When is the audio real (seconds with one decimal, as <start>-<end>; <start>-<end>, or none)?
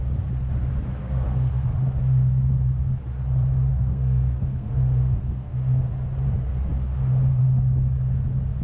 0.0-1.0; 1.5-3.7; 5.9-8.6